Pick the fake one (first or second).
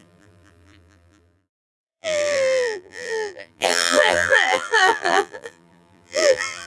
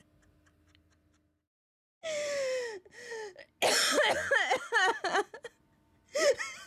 first